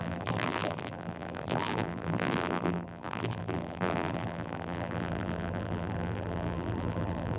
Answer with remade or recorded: remade